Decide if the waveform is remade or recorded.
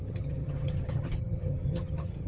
remade